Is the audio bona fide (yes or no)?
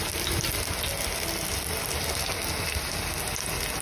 yes